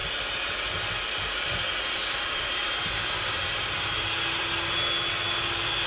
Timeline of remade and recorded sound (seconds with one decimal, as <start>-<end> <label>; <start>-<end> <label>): 0.0-5.9 recorded